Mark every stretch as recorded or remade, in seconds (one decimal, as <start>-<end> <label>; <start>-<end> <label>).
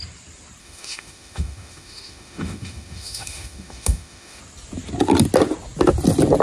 0.0-0.6 recorded; 0.6-4.4 remade; 4.4-6.4 recorded